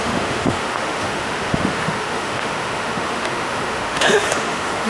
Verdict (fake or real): fake